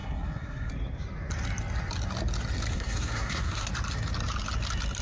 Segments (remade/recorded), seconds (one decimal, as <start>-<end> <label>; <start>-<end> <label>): 0.0-0.7 remade; 0.7-2.7 recorded; 2.7-3.7 remade; 3.7-5.0 recorded